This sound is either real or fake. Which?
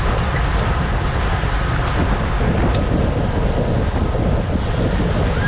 real